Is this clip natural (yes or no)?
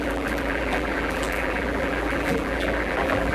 no